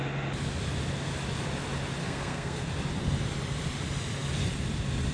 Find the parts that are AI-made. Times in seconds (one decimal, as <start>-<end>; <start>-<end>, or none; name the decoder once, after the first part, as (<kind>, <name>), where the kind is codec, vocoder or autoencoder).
2.0-2.6 (codec, SNAC)